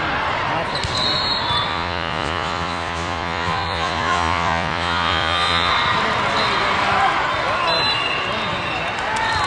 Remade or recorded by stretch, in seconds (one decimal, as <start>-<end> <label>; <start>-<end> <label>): 0.0-1.7 recorded; 1.7-5.7 remade; 5.7-9.5 recorded